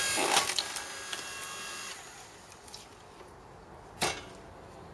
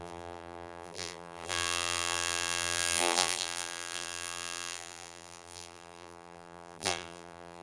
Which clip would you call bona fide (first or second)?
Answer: first